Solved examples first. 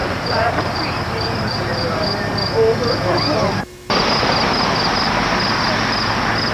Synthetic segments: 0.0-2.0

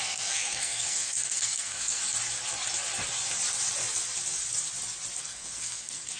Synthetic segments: 0.0-2.0; 5.2-6.2